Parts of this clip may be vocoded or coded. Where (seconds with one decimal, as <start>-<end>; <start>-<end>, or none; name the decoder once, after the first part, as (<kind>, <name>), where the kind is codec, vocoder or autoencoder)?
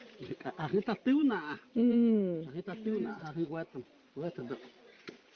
0.0-5.4 (vocoder, Vocos)